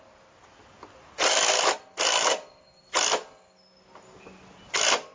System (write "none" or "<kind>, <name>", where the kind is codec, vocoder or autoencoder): none